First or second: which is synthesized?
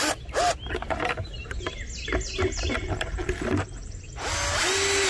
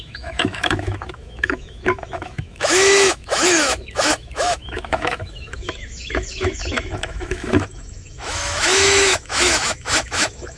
second